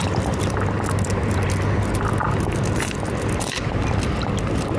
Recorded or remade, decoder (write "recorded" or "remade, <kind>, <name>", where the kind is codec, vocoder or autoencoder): recorded